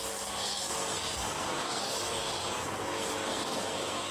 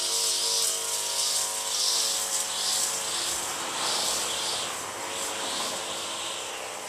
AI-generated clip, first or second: first